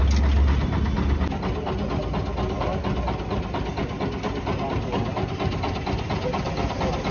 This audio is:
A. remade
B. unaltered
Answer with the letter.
B